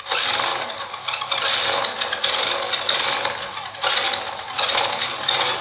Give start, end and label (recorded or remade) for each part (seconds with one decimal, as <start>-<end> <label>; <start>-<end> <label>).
0.0-5.6 recorded